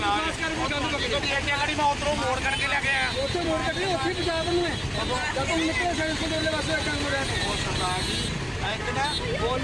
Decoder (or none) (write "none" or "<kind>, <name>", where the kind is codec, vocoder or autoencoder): none